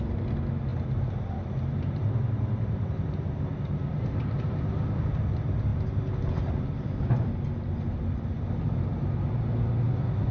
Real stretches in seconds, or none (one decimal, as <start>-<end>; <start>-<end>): 0.0-0.7; 4.7-10.3